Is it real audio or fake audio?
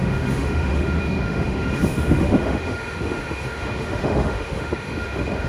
fake